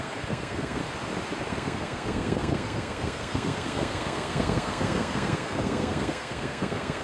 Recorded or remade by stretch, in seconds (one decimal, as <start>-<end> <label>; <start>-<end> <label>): 0.0-0.8 remade; 0.8-1.5 recorded; 1.5-7.0 remade